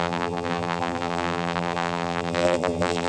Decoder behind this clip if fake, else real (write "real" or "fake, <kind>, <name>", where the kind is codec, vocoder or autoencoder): fake, vocoder, BigVGAN v2